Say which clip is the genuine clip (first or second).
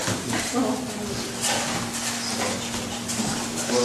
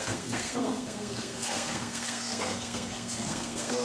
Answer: first